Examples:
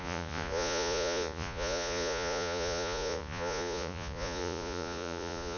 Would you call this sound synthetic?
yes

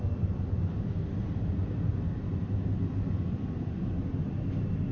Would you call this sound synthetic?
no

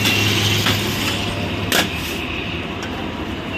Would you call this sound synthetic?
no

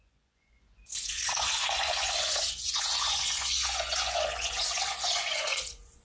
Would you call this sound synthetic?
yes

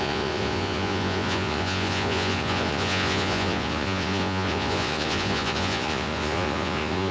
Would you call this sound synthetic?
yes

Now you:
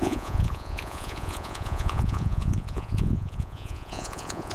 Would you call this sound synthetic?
yes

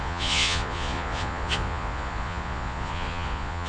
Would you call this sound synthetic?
yes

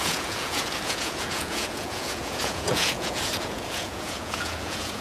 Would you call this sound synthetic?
yes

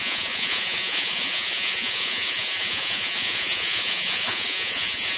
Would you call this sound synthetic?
yes